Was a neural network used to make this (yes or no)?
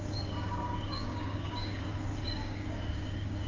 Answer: yes